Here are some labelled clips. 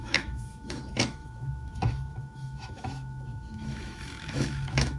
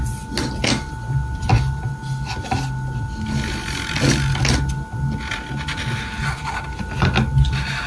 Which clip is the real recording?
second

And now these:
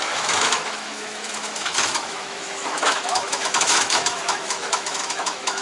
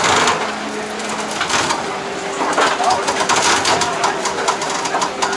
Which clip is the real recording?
second